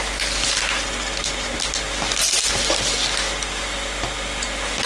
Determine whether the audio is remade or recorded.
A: recorded